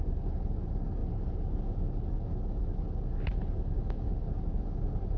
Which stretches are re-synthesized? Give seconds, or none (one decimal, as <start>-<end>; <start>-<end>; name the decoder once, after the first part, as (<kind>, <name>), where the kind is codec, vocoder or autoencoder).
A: none